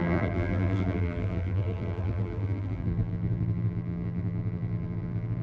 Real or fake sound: fake